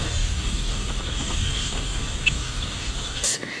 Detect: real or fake fake